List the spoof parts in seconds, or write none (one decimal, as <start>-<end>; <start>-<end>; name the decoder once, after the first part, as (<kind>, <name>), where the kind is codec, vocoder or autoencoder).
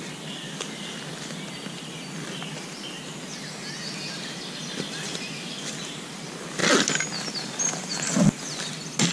none